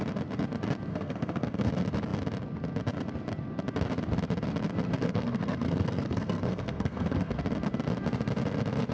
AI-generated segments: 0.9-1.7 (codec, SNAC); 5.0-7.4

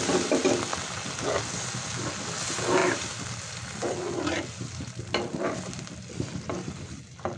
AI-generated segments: 2.8-7.4 (vocoder, BigVGAN v2)

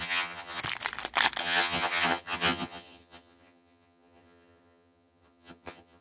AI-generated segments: 0.0-0.6 (vocoder, HiFi-GAN); 1.4-6.0

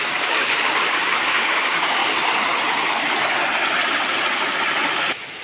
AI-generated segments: 0.0-2.0 (codec, DAC)

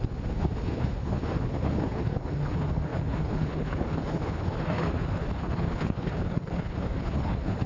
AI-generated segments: 0.0-7.7 (codec, HILCodec)

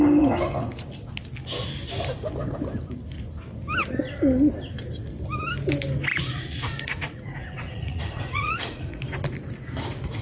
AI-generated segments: 6.1-9.0 (vocoder, Vocos)

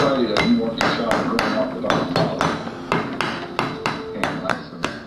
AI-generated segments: 4.5-5.1 (codec, SNAC)

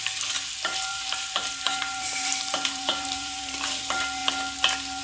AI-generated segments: 0.9-3.8 (vocoder, BigVGAN v2)